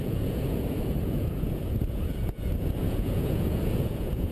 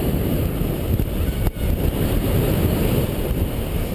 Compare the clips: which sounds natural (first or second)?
second